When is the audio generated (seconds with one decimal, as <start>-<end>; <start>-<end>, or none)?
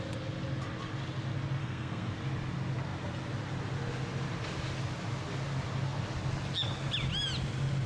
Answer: 1.6-2.1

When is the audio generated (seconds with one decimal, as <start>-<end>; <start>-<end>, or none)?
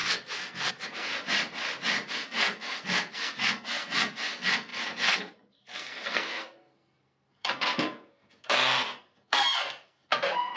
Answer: 0.0-1.1; 2.1-10.6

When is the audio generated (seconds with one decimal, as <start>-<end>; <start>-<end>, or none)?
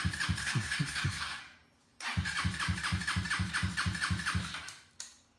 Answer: 0.4-1.4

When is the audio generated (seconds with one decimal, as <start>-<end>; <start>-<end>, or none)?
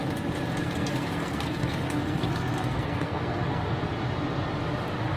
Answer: 0.6-3.7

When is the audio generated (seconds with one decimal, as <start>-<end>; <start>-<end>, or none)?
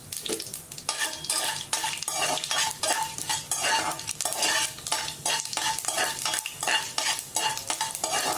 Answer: none